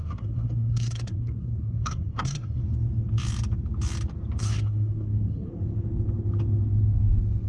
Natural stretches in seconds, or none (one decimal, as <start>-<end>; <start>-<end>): 2.6-4.4; 5.5-7.5